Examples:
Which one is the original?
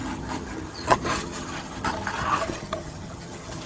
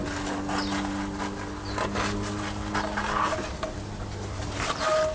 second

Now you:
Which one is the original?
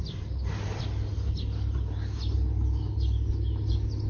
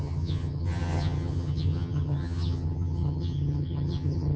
first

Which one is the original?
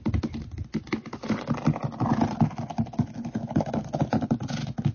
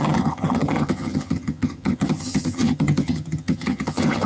first